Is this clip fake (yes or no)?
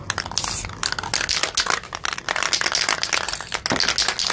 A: no